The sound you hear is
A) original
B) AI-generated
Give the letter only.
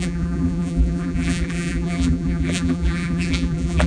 B